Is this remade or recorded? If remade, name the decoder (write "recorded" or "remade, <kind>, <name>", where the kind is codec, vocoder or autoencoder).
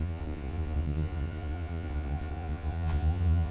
remade, vocoder, Vocos